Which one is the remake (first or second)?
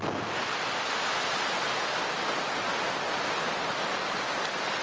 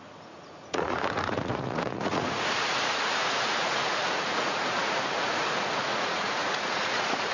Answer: second